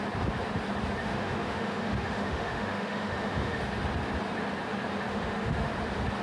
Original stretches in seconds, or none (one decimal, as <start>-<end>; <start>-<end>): 0.0-1.0; 3.6-5.1; 5.7-6.2